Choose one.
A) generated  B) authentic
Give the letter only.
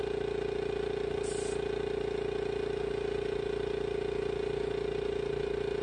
B